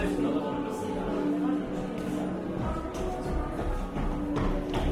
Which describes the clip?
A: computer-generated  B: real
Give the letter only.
B